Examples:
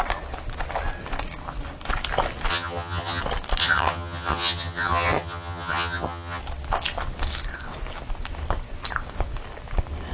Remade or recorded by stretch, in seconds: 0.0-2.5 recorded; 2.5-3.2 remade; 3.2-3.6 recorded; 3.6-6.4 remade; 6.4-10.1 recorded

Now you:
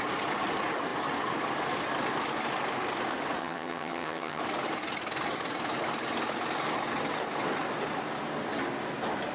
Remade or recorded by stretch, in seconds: 0.0-3.4 recorded; 3.4-4.4 remade; 4.4-9.3 recorded

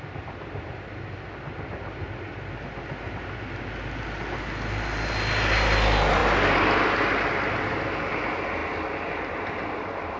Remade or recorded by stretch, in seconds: 0.0-10.2 recorded

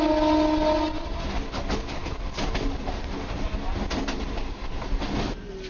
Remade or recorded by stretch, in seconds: 0.0-5.7 recorded

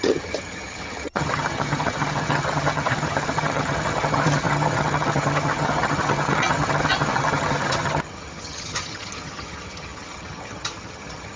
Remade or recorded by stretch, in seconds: 0.0-11.4 remade

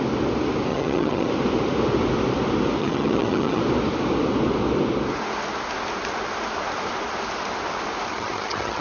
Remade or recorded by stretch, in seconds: 0.0-0.7 recorded; 0.7-1.3 remade; 1.3-2.8 recorded; 2.8-3.6 remade; 3.6-8.1 recorded; 8.1-8.8 remade